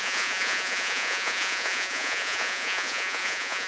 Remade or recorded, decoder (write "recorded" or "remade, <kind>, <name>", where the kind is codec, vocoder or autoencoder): remade, vocoder, Vocos